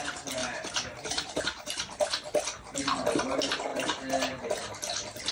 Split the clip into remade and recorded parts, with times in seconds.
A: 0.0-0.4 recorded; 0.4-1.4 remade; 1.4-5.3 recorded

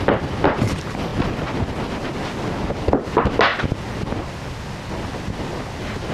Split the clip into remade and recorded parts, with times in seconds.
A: 0.0-6.1 recorded

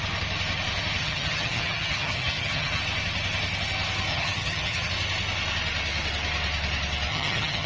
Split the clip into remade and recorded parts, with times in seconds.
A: 0.0-1.0 recorded; 1.0-2.8 remade; 2.8-4.1 recorded; 4.1-4.9 remade; 4.9-7.1 recorded; 7.1-7.7 remade

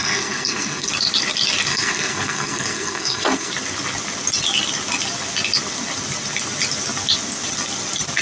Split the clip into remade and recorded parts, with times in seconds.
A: 0.0-0.9 remade; 0.9-1.7 recorded; 1.7-3.5 remade; 3.5-8.2 recorded

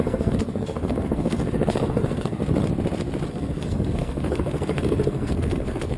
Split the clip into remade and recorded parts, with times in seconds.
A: 0.0-2.4 remade; 2.4-3.3 recorded; 3.3-6.0 remade

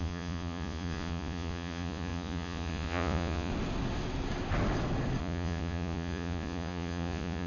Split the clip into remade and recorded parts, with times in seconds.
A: 0.0-3.5 remade; 3.5-5.2 recorded; 5.2-7.5 remade

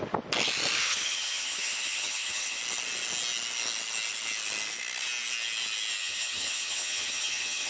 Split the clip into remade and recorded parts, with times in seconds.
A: 0.0-0.8 recorded; 0.8-2.6 remade; 2.6-6.0 recorded; 6.0-7.7 remade